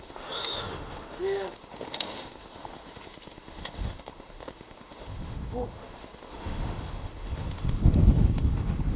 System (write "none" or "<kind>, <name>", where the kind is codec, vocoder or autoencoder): autoencoder, DAC-VAE